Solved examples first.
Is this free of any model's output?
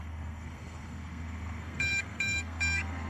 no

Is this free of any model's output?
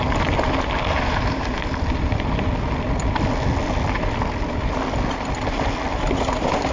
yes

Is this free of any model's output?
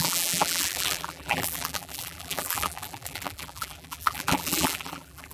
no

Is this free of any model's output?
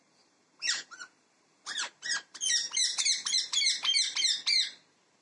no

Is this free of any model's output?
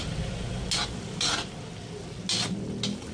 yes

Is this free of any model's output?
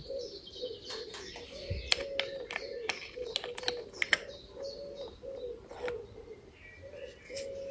yes